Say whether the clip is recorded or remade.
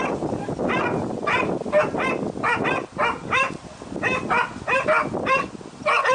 recorded